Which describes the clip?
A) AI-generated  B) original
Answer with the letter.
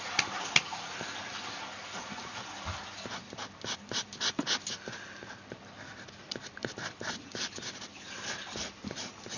B